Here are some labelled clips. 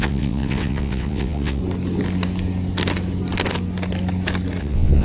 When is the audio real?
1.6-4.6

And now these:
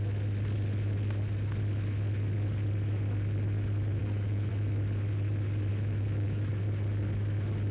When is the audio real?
0.0-4.0; 4.5-5.7; 6.5-7.7